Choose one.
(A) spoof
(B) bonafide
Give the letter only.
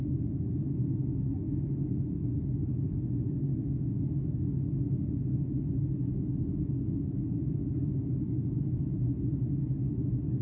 A